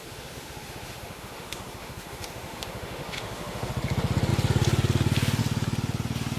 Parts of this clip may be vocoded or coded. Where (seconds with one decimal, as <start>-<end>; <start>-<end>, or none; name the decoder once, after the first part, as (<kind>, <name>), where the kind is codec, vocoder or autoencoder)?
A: 0.0-3.7 (autoencoder, DAC-VAE)